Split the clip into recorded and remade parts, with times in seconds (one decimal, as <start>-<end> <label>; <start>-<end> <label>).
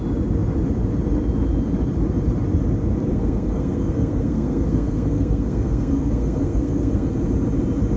0.0-3.1 recorded; 3.1-7.1 remade; 7.1-8.0 recorded